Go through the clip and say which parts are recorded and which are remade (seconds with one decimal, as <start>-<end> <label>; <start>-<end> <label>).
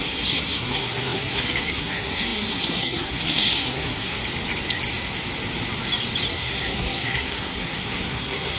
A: 0.0-4.2 remade; 4.2-6.3 recorded; 6.3-8.6 remade